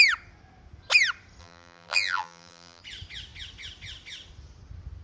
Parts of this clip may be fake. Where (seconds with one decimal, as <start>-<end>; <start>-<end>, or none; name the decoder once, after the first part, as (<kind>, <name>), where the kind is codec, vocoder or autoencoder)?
1.4-2.8 (vocoder, BigVGAN v2)